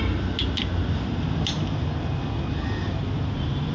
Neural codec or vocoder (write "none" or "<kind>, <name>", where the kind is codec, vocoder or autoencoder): none